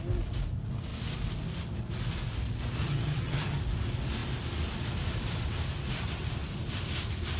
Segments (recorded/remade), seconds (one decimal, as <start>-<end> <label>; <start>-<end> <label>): 0.0-2.8 recorded; 2.8-3.6 remade; 3.6-7.4 recorded